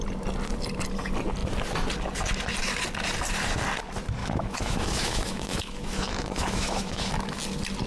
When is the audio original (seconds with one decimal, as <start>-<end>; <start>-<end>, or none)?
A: 0.0-4.2; 7.1-7.9